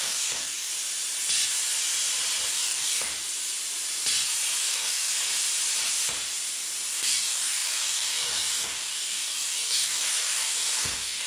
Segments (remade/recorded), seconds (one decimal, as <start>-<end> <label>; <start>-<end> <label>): 0.0-0.7 remade; 0.7-2.5 recorded; 2.5-3.1 remade; 3.1-4.6 recorded; 4.6-5.1 remade; 5.1-6.9 recorded; 6.9-11.3 remade